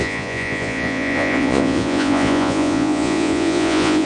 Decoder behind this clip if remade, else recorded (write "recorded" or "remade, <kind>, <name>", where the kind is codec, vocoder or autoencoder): remade, vocoder, Vocos